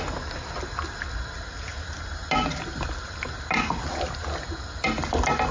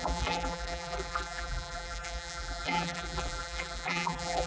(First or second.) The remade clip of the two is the second